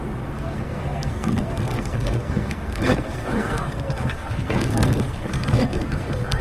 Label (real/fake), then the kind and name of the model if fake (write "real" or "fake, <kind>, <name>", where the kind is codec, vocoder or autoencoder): fake, codec, SNAC